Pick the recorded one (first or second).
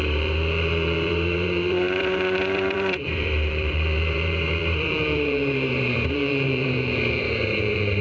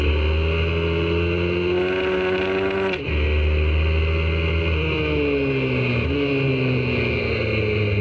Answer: second